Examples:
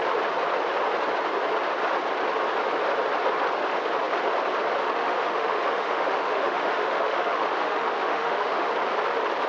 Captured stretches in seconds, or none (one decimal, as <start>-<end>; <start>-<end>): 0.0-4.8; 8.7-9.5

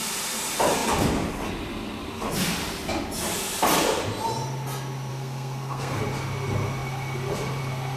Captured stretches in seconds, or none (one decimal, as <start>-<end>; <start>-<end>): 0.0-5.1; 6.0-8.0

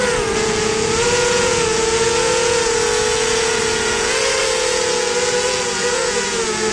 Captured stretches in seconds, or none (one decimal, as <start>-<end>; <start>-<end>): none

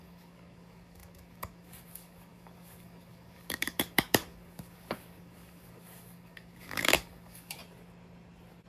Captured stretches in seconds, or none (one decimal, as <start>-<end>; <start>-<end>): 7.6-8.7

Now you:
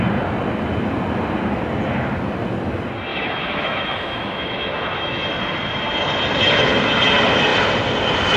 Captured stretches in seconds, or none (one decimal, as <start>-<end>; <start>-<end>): 0.0-3.1; 5.3-8.4

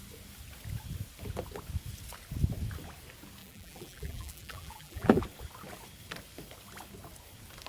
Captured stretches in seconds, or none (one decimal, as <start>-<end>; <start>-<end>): 0.0-3.4; 5.2-7.7

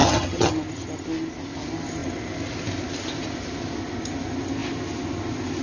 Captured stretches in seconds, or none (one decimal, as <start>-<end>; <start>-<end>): 0.5-5.6